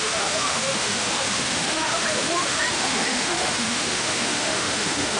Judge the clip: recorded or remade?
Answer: remade